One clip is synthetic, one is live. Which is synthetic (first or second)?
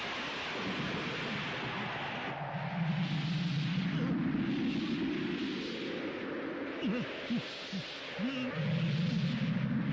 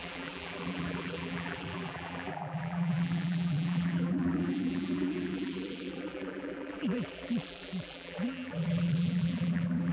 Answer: second